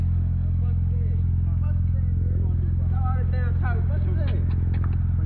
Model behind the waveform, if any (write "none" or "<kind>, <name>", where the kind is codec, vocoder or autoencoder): none